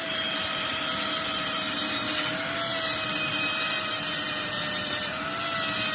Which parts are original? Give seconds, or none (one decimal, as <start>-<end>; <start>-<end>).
2.1-2.7; 5.2-5.9